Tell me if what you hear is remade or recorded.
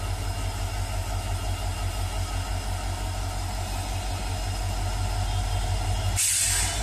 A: recorded